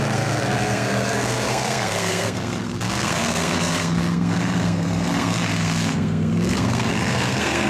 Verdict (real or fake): fake